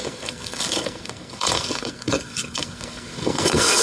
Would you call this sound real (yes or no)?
no